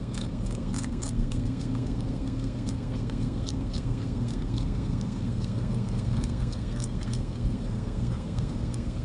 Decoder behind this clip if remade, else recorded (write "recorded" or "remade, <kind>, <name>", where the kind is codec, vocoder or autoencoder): remade, codec, SNAC